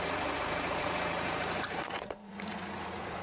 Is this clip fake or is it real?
fake